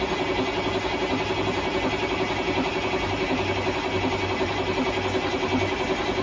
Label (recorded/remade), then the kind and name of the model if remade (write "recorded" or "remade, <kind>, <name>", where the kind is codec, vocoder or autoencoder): recorded